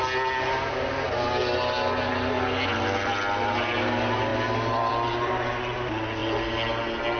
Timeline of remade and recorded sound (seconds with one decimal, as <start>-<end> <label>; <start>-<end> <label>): 0.0-7.2 recorded